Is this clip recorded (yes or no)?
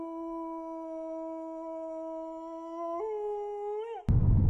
yes